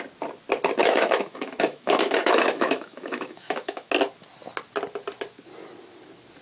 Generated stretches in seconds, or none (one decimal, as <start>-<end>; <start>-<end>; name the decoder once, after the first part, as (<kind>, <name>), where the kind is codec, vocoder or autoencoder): 0.8-3.9 (autoencoder, DAC-VAE)